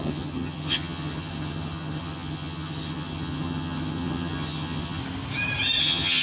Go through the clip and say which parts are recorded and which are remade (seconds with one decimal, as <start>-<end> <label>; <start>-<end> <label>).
0.0-5.0 remade; 5.0-5.8 recorded; 5.8-6.2 remade